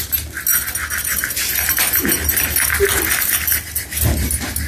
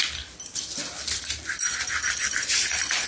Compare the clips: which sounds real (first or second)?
first